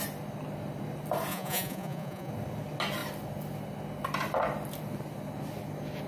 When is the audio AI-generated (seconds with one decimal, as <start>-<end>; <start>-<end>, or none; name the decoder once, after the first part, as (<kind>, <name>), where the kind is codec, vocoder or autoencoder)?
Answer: 1.3-2.3 (vocoder, Vocos)